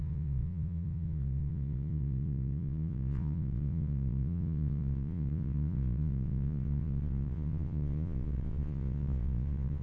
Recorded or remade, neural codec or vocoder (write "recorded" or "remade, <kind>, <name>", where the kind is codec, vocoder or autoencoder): remade, vocoder, Vocos